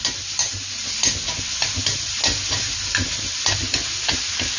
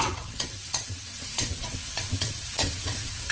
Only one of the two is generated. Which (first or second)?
second